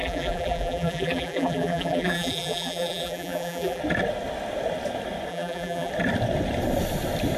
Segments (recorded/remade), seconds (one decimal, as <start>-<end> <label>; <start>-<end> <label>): 0.0-3.8 remade; 3.8-5.3 recorded; 5.3-5.9 remade; 5.9-7.4 recorded